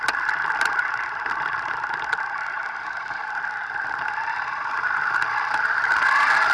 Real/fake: fake